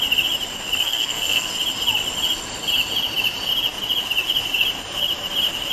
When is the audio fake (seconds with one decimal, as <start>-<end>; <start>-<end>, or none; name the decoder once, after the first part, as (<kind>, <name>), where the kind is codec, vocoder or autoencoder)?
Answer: 0.8-1.5 (codec, SNAC)